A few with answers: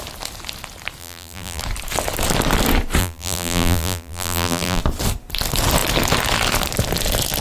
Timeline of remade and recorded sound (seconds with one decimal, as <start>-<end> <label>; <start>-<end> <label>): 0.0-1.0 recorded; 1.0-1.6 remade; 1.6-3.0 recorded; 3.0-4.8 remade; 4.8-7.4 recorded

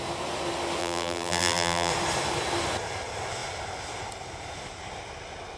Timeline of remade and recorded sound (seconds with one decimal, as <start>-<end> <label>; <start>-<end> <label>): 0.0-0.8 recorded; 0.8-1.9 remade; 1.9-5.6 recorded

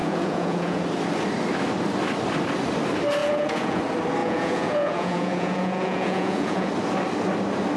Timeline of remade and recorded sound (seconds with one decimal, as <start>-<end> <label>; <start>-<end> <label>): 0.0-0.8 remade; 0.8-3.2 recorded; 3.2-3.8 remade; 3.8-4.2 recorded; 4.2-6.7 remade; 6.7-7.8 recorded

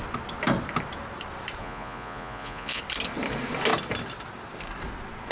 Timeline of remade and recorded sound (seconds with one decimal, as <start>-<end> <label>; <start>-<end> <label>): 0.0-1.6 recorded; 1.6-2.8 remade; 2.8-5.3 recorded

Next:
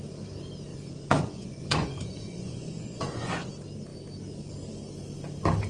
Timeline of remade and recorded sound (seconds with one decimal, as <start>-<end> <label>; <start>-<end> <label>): 0.0-0.7 recorded; 0.7-3.5 remade; 3.5-5.7 recorded